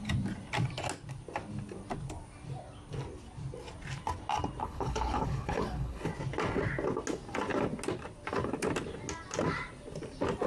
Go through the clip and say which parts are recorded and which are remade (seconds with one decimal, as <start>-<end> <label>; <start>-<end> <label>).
0.0-4.6 recorded; 4.6-6.1 remade; 6.1-10.5 recorded